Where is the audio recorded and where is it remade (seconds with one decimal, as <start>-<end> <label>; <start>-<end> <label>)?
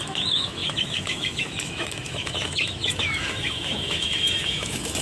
0.0-5.0 remade